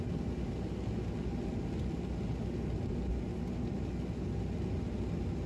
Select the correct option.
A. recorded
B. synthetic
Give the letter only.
A